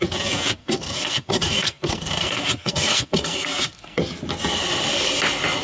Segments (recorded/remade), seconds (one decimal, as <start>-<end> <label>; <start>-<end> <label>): 0.0-0.6 recorded; 0.6-4.0 remade; 4.0-5.6 recorded